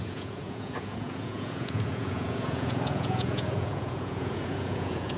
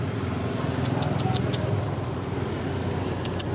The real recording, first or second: second